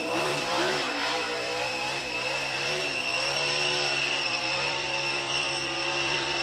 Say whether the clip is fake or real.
fake